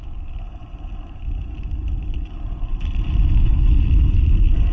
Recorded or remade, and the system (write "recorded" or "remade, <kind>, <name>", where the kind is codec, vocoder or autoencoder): recorded